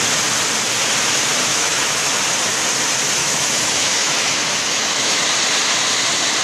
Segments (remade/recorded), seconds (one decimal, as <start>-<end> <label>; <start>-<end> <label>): 0.0-1.5 recorded; 1.5-2.1 remade; 2.1-3.2 recorded; 3.2-5.2 remade; 5.2-6.4 recorded